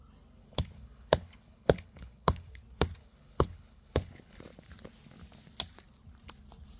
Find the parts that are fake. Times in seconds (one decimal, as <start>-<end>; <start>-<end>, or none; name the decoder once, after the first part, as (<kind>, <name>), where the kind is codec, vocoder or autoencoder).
0.4-2.6 (codec, HILCodec); 3.0-4.4